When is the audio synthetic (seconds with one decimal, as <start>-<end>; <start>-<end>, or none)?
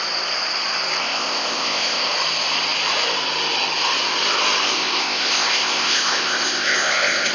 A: 1.0-2.1; 4.7-7.3